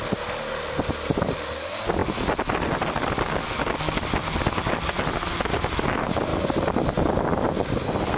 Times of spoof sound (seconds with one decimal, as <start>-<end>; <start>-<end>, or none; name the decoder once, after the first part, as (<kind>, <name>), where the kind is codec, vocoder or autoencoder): none